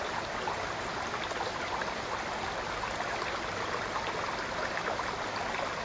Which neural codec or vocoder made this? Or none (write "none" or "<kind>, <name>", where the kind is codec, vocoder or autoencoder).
none